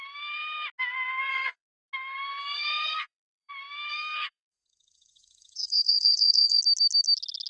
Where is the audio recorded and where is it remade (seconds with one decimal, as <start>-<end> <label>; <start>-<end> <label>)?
0.0-1.3 recorded; 1.3-1.9 remade; 1.9-2.4 recorded; 2.4-3.5 remade; 3.5-3.9 recorded; 3.9-6.6 remade; 6.6-7.5 recorded